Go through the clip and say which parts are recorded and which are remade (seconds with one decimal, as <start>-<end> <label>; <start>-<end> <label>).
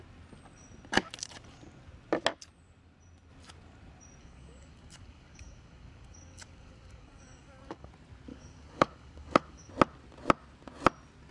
0.0-4.2 recorded; 4.2-7.9 remade; 7.9-8.3 recorded; 8.3-9.7 remade; 9.7-11.3 recorded